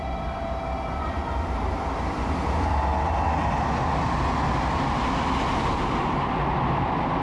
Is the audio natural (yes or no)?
yes